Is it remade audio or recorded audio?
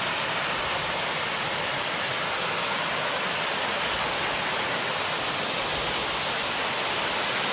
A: recorded